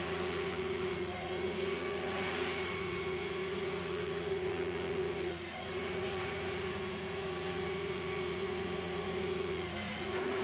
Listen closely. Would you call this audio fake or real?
fake